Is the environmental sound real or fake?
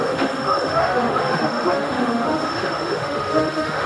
fake